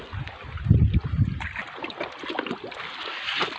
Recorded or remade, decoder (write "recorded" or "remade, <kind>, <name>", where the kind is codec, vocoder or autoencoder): recorded